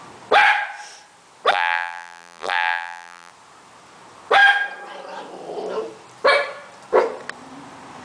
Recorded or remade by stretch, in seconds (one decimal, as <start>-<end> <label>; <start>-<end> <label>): 0.0-1.5 recorded; 1.5-3.3 remade; 3.3-8.0 recorded